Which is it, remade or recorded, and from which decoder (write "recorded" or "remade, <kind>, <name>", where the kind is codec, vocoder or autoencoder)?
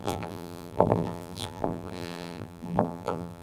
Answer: remade, vocoder, BigVGAN v2